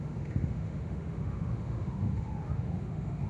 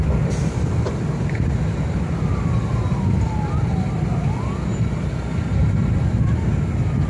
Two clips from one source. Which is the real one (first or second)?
second